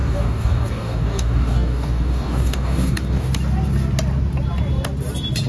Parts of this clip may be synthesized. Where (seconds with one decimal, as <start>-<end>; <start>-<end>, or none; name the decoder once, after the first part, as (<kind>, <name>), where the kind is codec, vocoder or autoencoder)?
0.0-3.3 (codec, DAC)